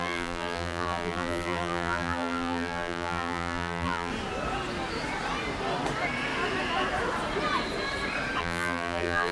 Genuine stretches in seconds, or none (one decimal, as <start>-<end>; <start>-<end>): 4.1-8.4

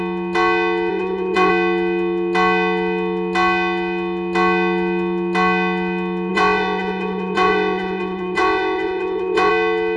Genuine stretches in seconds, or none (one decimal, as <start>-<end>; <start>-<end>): 0.0-0.9; 1.5-6.3; 9.5-10.0

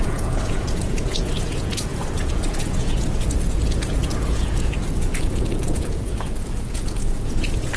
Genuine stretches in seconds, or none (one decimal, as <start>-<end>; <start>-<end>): none

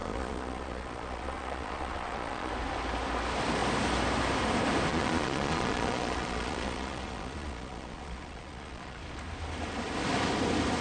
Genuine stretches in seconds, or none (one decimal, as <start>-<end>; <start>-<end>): 2.5-4.9; 9.0-10.8